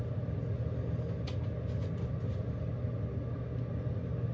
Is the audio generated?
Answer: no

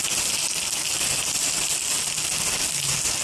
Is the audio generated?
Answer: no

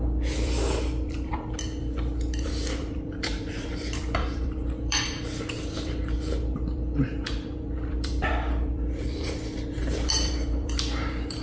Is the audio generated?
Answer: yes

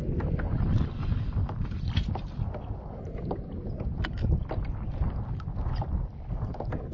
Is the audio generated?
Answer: no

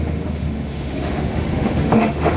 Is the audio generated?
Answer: yes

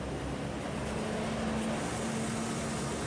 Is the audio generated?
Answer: no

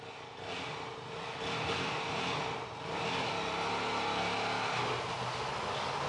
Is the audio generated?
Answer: no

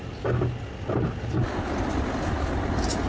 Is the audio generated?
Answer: no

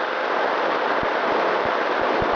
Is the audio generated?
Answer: no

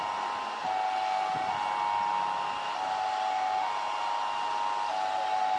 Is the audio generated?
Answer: no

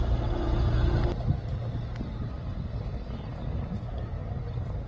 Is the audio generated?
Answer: no